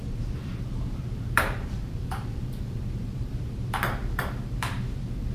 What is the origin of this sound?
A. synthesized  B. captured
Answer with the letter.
A